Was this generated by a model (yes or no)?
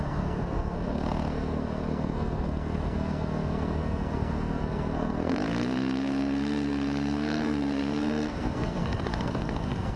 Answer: yes